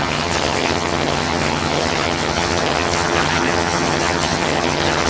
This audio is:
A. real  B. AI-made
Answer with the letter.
B